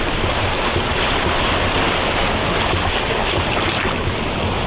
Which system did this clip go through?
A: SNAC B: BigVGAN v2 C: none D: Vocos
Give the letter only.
C